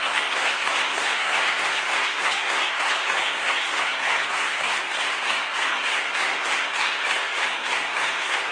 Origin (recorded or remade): remade